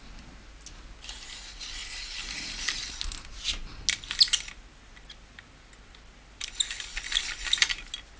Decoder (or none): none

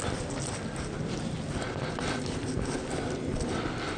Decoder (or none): none